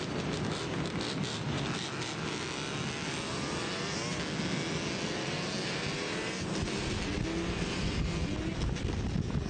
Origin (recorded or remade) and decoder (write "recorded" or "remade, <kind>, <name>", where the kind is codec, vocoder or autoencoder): recorded